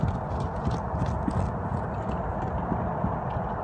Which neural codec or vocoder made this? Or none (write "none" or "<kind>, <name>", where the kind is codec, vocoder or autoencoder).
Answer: none